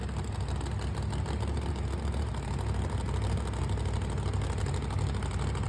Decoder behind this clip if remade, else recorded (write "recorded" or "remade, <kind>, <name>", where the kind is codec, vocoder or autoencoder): recorded